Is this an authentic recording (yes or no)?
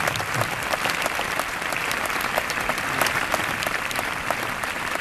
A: no